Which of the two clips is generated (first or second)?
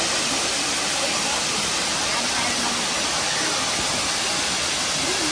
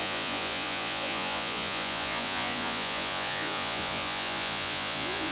second